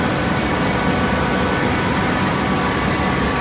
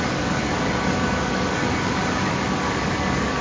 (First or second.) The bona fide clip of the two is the first